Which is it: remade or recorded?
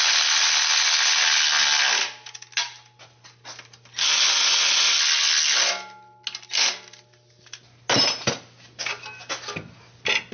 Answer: recorded